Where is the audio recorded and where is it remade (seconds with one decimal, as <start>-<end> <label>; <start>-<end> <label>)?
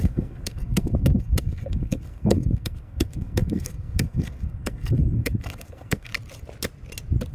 0.0-6.1 remade; 6.1-7.3 recorded